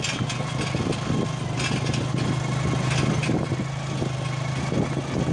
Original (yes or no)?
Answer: yes